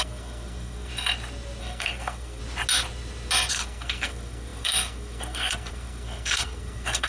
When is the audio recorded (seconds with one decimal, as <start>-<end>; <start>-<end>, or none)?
0.9-1.6; 2.4-3.5